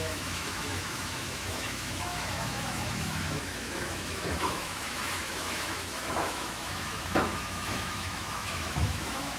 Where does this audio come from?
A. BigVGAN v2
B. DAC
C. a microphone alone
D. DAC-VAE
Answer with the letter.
D